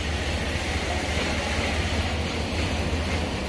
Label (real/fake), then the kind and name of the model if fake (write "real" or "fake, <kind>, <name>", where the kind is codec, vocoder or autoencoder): real